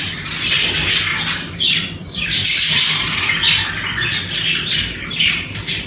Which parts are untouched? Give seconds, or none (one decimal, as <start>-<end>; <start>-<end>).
1.1-2.0; 2.4-5.0